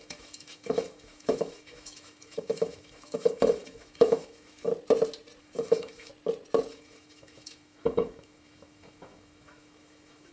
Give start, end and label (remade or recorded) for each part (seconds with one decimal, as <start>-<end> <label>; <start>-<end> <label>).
0.0-4.7 remade; 4.7-5.4 recorded; 5.4-6.1 remade; 6.1-6.7 recorded; 6.7-10.3 remade